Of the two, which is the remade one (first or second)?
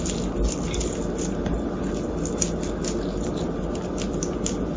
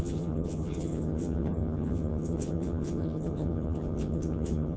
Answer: second